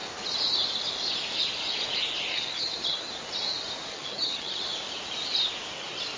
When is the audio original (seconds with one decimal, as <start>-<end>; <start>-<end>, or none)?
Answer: 0.0-2.3; 3.1-3.9; 4.6-6.2